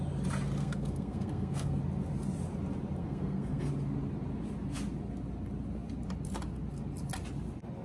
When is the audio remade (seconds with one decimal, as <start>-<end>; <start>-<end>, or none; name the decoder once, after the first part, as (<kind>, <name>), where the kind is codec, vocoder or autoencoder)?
0.6-1.8 (codec, SNAC); 3.0-3.7